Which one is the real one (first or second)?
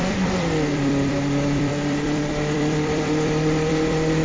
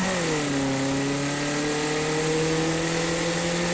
second